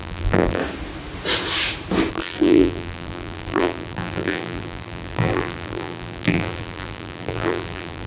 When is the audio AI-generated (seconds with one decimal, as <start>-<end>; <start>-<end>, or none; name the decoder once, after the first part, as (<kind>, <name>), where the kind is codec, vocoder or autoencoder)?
0.0-0.6 (vocoder, BigVGAN v2); 2.1-8.1